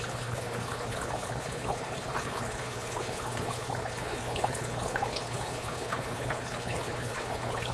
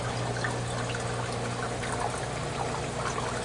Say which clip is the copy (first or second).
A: first